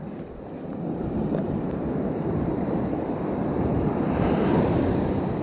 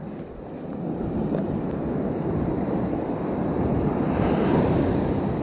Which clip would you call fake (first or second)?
first